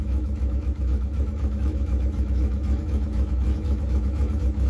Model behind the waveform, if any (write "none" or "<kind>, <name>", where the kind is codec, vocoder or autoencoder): autoencoder, DAC-VAE